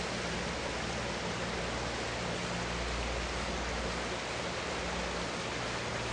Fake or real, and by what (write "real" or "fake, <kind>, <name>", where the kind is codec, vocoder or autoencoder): real